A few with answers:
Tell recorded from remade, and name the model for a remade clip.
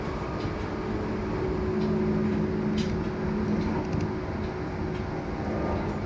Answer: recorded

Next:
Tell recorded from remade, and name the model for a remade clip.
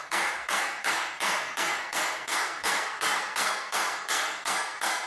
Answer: remade, codec, SNAC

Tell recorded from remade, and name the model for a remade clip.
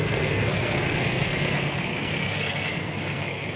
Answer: remade, codec, SNAC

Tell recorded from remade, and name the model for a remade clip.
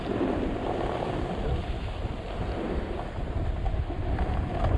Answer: recorded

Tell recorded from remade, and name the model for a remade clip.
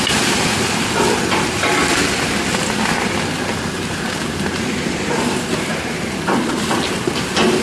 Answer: recorded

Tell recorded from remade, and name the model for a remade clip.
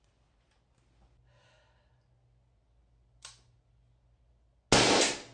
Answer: recorded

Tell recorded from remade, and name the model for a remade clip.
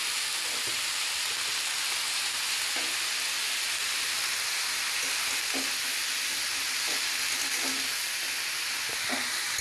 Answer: recorded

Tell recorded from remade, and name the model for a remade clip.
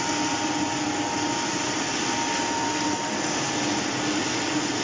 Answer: recorded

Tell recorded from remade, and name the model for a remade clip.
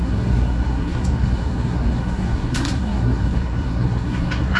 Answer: remade, codec, SNAC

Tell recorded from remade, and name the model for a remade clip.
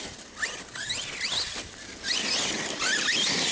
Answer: recorded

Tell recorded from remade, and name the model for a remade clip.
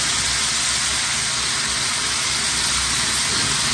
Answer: recorded